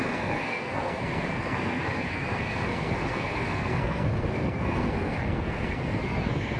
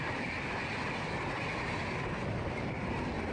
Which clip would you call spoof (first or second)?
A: first